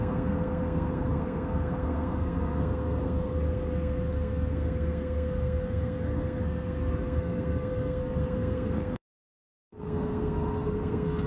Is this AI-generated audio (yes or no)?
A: yes